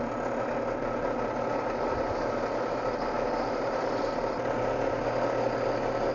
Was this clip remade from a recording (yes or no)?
no